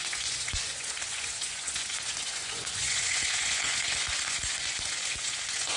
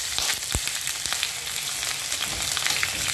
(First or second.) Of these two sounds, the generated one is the first